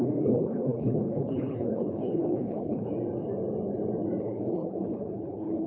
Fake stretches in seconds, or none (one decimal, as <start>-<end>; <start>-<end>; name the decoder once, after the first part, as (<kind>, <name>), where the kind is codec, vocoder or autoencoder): 0.0-2.9 (codec, HILCodec); 4.2-5.7